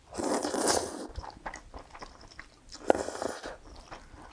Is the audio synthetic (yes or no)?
no